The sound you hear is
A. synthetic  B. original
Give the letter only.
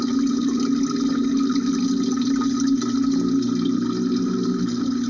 B